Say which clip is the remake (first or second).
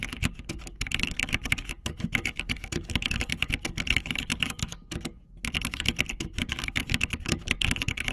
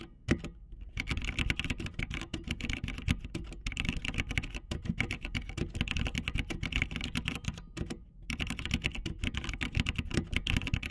first